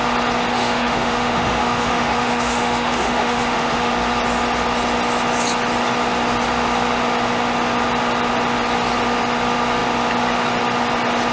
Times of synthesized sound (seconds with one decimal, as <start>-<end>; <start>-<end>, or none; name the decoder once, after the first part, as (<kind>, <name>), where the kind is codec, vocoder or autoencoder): 0.5-3.9 (autoencoder, DAC-VAE)